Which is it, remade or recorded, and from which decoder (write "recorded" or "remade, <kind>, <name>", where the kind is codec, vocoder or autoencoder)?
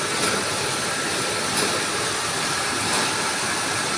remade, vocoder, BigVGAN v2